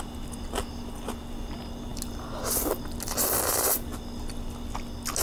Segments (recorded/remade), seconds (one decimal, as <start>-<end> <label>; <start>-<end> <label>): 0.0-5.2 recorded